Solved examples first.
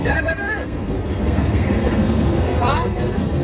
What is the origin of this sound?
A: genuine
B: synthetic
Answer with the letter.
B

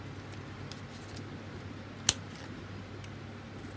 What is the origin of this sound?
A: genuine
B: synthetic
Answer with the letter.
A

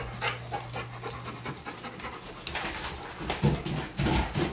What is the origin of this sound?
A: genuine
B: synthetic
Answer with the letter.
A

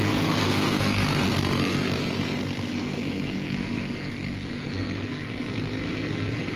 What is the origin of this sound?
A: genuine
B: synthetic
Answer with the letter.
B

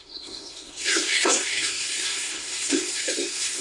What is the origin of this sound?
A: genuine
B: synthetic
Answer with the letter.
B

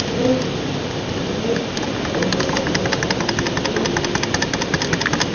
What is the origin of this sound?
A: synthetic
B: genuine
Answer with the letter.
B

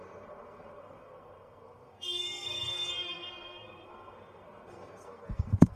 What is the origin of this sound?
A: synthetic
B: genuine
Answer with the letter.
A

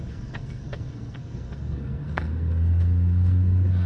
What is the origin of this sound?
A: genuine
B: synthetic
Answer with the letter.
B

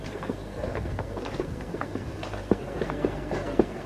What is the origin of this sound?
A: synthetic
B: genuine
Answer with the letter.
A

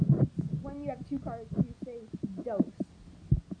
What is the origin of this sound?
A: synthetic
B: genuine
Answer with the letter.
B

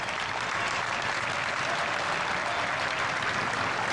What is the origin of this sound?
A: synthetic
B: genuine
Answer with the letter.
B